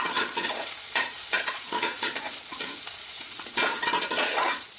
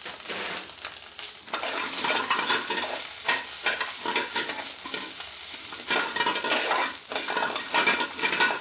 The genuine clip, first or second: second